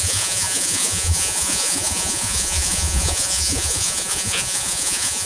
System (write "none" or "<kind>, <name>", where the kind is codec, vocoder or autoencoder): vocoder, Vocos